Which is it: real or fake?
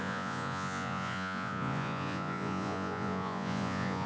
fake